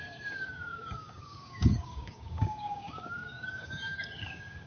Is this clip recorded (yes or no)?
no